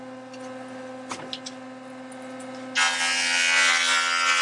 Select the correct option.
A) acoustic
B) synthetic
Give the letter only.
A